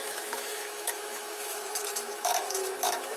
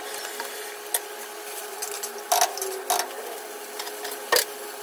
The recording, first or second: second